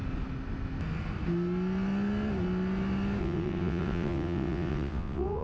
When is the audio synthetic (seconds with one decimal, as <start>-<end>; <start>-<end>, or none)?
3.2-5.4